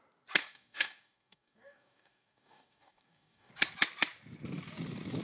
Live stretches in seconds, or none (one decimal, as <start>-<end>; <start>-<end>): 0.0-0.4; 3.5-5.2